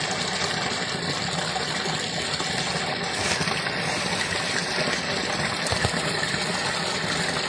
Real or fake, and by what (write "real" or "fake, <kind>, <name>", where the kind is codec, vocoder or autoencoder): real